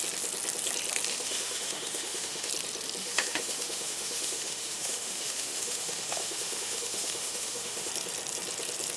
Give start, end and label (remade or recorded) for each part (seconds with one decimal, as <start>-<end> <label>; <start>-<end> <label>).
0.0-1.1 recorded; 1.1-2.5 remade; 2.5-3.0 recorded; 3.0-7.9 remade; 7.9-9.0 recorded